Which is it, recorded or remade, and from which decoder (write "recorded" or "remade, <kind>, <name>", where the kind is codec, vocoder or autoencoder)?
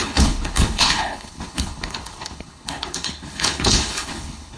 remade, codec, HILCodec